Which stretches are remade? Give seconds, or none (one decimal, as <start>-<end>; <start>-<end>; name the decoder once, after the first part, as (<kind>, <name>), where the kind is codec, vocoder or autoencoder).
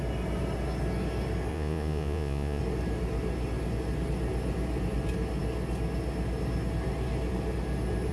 1.5-2.6 (vocoder, Vocos)